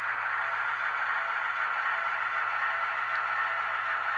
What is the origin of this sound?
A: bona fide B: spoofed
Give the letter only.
A